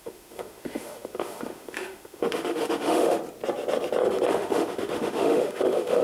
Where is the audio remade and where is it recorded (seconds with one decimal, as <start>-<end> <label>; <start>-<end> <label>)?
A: 0.0-3.2 remade; 3.2-4.3 recorded; 4.3-6.0 remade